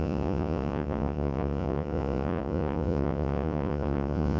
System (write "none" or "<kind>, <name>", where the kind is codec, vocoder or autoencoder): vocoder, Vocos